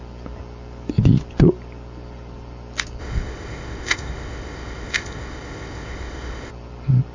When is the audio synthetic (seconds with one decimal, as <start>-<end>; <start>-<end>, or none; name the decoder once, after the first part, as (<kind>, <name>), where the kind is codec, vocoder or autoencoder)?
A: 3.0-6.5 (codec, ZipCodec)